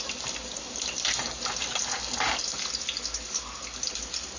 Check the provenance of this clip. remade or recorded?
recorded